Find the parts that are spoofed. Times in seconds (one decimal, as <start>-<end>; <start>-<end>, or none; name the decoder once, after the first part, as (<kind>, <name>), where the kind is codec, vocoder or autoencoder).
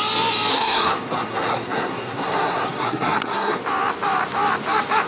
0.5-3.6 (codec, SNAC)